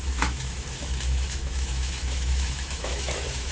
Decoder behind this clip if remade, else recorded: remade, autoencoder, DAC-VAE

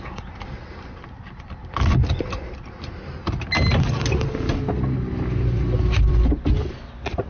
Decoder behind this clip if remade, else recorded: recorded